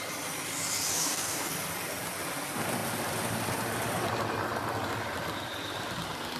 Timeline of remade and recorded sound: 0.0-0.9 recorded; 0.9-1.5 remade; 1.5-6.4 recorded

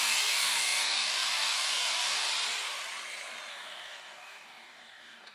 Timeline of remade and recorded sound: 0.0-2.3 remade; 2.3-3.5 recorded; 3.5-5.3 remade

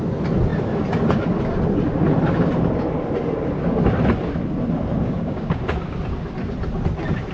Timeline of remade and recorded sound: 0.0-5.0 recorded; 5.0-5.6 remade; 5.6-7.3 recorded

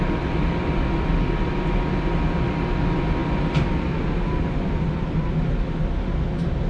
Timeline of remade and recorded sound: 0.0-6.7 recorded